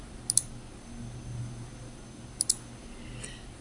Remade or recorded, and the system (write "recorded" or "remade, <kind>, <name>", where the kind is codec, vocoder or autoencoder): recorded